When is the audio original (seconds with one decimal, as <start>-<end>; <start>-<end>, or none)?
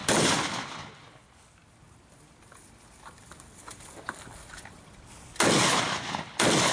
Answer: 0.0-6.7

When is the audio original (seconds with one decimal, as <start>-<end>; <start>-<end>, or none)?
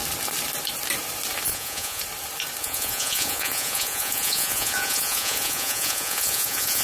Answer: 0.0-1.5; 2.0-2.6